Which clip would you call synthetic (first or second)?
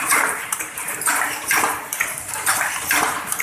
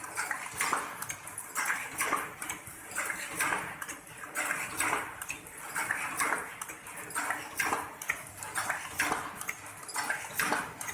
first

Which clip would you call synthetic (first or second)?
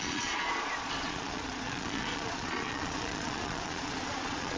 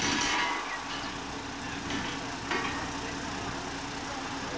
first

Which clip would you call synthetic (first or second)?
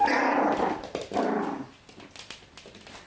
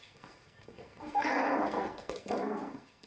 second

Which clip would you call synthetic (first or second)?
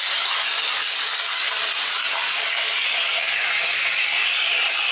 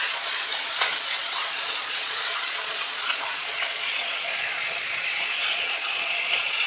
second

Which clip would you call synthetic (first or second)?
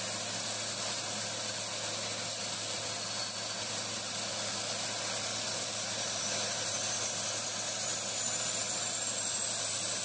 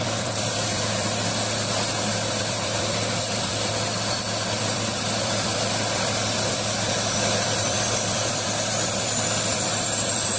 second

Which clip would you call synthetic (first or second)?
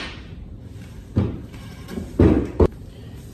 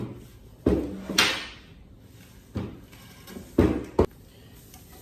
first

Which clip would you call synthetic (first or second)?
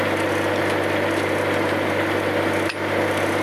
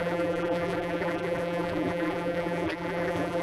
second